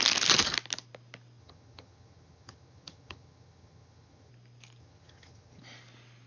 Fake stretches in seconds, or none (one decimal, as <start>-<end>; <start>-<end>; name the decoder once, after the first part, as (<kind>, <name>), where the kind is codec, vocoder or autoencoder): 1.4-4.3 (vocoder, HiFi-GAN); 4.8-5.6